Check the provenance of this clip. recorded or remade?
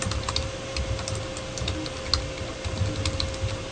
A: recorded